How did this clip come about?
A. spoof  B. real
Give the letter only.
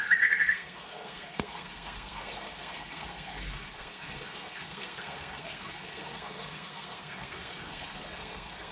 A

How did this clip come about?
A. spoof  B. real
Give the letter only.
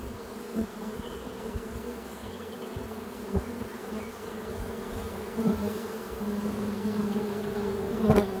A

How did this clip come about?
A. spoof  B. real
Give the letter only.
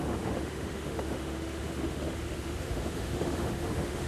A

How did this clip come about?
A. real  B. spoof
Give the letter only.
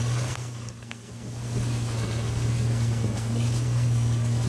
B